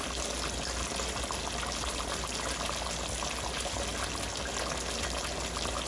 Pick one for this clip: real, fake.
real